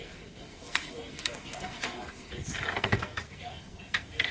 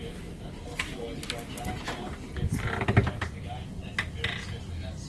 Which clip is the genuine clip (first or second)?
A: second